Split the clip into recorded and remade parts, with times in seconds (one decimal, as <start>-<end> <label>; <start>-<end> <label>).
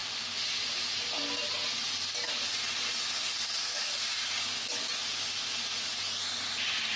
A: 0.0-7.0 recorded